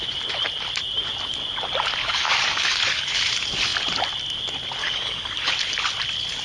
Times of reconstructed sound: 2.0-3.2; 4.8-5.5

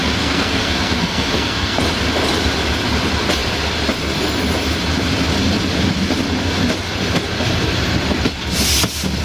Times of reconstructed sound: 0.0-1.8